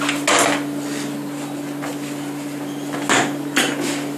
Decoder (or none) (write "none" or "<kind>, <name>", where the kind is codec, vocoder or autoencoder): none